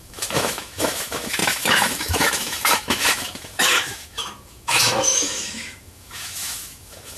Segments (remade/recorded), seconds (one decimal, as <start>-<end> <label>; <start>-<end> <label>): 0.0-7.2 remade